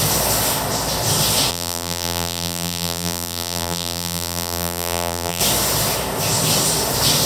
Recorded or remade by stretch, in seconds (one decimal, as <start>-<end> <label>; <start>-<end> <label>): 0.0-1.5 recorded; 1.5-5.4 remade; 5.4-7.3 recorded